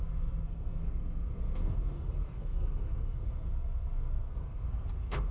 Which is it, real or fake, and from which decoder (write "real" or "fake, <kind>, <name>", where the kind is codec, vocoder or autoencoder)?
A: fake, codec, SNAC